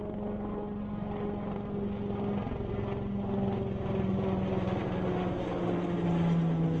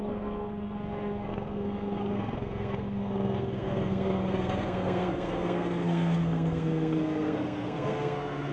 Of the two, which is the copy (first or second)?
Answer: second